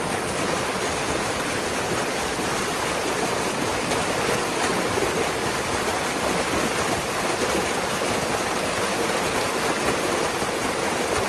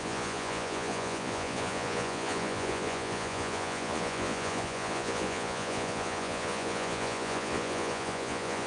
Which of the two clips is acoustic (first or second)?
first